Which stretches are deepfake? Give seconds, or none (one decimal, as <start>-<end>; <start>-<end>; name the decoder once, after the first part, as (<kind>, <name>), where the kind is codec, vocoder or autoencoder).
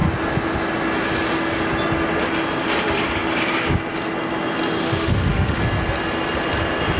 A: 4.8-5.6 (autoencoder, DAC-VAE)